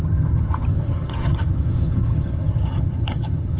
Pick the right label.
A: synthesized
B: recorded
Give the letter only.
A